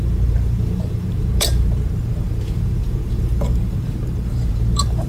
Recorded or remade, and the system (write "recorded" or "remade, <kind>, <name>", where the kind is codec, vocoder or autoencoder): remade, vocoder, BigVGAN v2